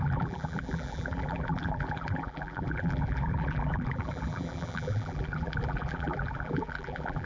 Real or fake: fake